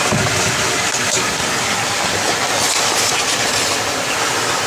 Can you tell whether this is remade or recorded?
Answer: recorded